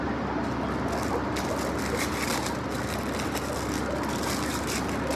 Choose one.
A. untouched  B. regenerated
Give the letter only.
A